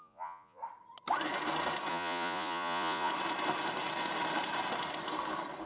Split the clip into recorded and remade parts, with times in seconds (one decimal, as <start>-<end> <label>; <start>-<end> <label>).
0.0-0.6 remade; 0.6-1.9 recorded; 1.9-3.1 remade; 3.1-5.7 recorded